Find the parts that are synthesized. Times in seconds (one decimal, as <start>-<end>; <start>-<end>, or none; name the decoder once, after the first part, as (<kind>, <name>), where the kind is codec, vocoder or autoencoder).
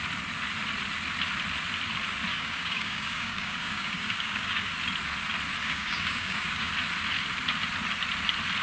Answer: 2.3-4.7 (codec, DAC); 5.6-6.7